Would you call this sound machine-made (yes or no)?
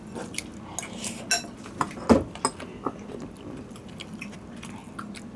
no